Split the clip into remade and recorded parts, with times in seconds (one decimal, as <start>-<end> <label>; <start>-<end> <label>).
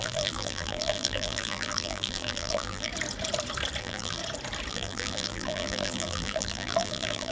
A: 0.0-2.9 remade; 2.9-3.8 recorded; 3.8-4.2 remade; 4.2-4.7 recorded; 4.7-7.3 remade